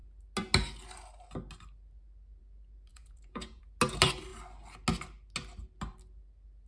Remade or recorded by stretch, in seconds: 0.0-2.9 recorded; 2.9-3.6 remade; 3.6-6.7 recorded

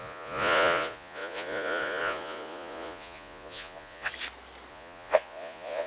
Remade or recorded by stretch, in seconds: 0.0-4.1 remade; 4.1-4.7 recorded; 4.7-5.9 remade

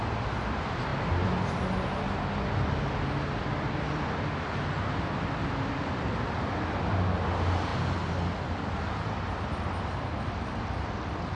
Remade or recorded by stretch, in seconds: 0.0-11.3 recorded

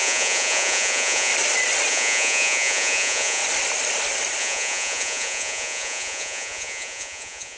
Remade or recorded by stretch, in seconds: 0.0-1.3 remade; 1.3-1.9 recorded; 1.9-3.4 remade; 3.4-4.4 recorded; 4.4-7.6 remade

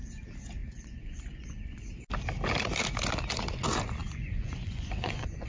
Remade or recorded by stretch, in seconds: 0.0-0.6 recorded; 0.6-1.9 remade; 1.9-4.0 recorded; 4.0-5.5 remade